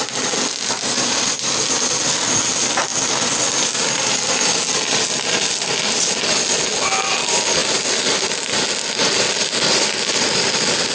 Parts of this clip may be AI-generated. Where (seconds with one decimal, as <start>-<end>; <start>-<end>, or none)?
none